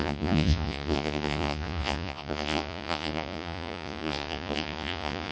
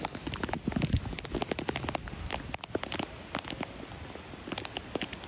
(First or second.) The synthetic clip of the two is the first